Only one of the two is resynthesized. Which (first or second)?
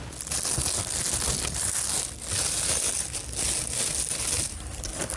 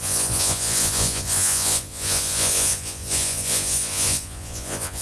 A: second